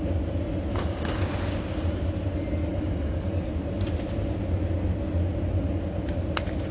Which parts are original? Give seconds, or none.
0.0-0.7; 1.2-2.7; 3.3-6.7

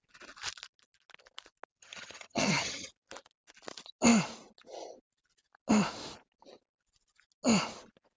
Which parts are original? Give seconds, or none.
0.0-1.8; 2.9-8.2

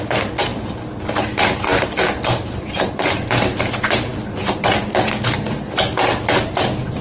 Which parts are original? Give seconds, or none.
0.0-7.0

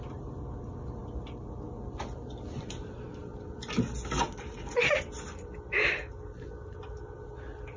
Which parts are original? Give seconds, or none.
0.0-7.8

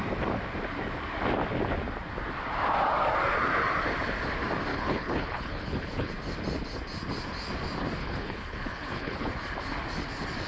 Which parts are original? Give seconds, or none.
0.0-4.7; 6.1-8.0; 9.3-10.5

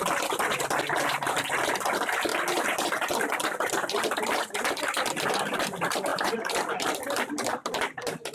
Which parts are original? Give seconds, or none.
0.0-8.3